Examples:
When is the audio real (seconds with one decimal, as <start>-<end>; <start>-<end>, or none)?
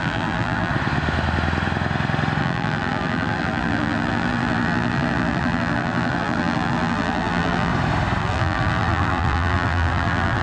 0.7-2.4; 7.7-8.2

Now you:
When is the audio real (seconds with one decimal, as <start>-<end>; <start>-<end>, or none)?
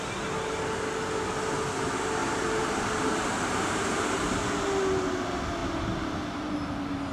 0.0-2.2; 4.0-5.6; 6.5-7.1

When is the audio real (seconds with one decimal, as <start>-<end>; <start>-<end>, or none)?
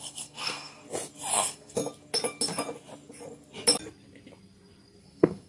0.8-1.3; 1.8-5.0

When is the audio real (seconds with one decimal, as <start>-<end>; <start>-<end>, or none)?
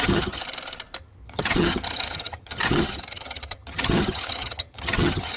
0.4-1.0